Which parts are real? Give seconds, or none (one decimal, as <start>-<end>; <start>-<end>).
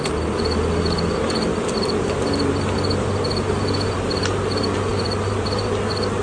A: 0.0-1.5; 4.4-4.9; 5.7-6.2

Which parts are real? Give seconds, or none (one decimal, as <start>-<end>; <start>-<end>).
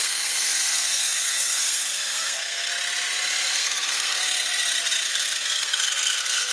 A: 2.7-3.5; 4.5-5.1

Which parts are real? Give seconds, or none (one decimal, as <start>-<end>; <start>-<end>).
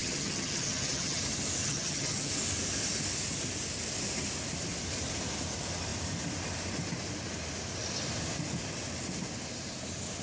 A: 1.2-1.6; 2.3-10.2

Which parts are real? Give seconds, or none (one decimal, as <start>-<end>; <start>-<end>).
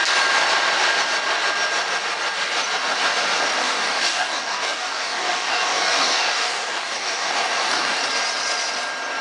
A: 0.0-3.6; 8.0-9.2